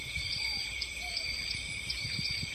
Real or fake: fake